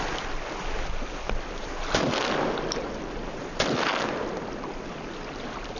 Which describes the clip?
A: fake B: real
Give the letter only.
B